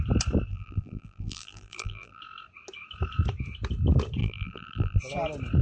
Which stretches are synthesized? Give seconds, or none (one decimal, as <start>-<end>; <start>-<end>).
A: 0.5-2.2; 4.2-5.0